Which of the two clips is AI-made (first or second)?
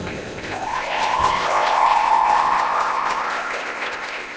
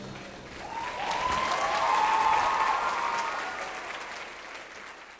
first